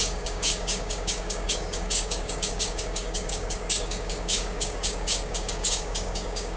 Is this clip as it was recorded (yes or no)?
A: no